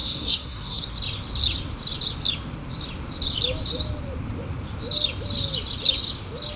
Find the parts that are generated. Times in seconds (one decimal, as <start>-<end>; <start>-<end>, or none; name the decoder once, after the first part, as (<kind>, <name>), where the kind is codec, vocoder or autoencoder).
0.0-0.8 (codec, SNAC)